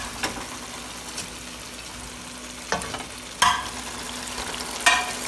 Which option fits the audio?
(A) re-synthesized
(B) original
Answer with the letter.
B